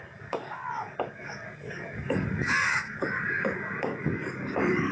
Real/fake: fake